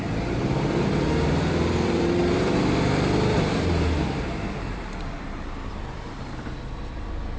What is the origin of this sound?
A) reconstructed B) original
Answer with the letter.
A